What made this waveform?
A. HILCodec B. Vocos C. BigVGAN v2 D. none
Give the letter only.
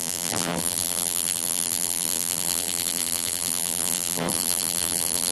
C